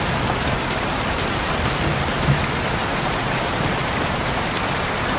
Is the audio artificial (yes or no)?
no